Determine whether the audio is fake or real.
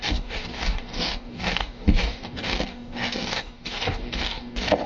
fake